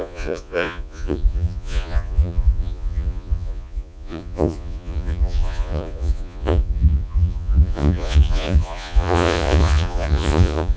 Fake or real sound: fake